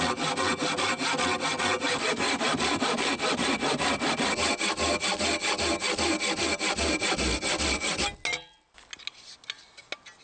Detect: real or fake real